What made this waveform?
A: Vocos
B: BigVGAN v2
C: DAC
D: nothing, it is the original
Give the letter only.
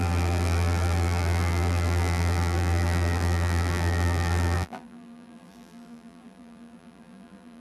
B